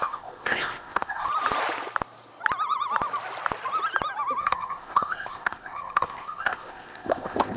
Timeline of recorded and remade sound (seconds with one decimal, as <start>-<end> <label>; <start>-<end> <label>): 0.0-1.3 remade; 1.3-4.4 recorded; 4.4-7.6 remade